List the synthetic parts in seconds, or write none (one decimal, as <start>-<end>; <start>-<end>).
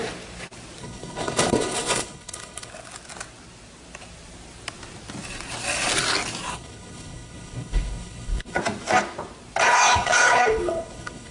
0.8-2.7; 6.5-8.6; 9.6-11.3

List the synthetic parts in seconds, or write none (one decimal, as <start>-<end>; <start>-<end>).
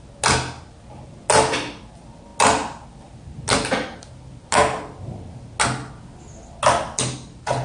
none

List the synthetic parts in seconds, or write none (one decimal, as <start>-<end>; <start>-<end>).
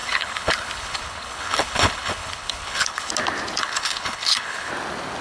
0.0-3.1; 3.6-4.7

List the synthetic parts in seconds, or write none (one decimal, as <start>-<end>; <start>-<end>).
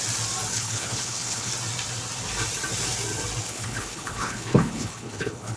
0.5-1.5; 3.5-5.6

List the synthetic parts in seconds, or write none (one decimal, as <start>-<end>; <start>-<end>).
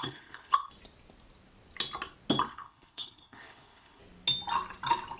0.0-0.7; 2.5-4.0